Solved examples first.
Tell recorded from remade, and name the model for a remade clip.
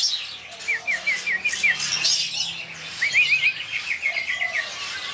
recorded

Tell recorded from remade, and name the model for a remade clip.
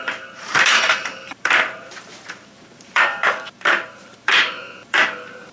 remade, vocoder, BigVGAN v2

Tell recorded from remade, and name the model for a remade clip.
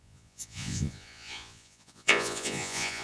remade, vocoder, Vocos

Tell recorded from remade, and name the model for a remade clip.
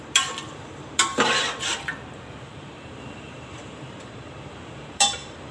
remade, vocoder, BigVGAN v2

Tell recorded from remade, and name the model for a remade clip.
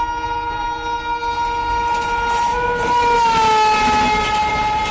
recorded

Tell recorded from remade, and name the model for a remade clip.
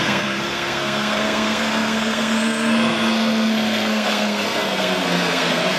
remade, codec, SNAC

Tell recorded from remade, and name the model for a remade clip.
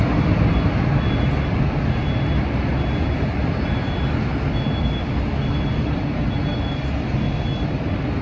recorded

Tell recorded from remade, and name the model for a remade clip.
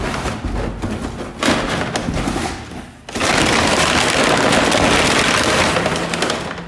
recorded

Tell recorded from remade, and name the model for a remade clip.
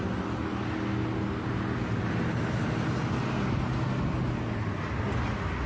recorded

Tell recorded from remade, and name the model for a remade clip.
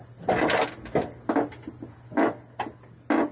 recorded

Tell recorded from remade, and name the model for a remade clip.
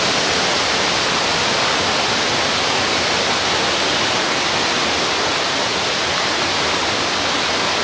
recorded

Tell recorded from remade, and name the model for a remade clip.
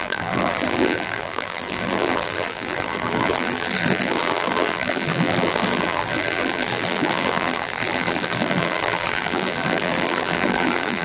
remade, vocoder, BigVGAN v2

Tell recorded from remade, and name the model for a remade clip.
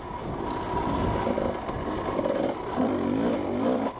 recorded